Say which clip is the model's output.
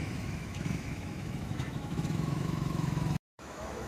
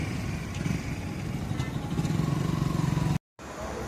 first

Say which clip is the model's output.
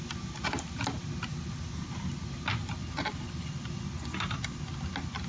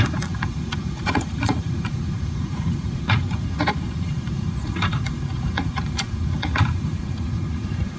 second